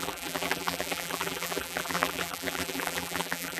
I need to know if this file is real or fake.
fake